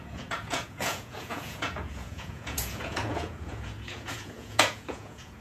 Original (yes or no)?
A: no